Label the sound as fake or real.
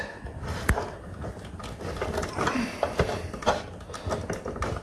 real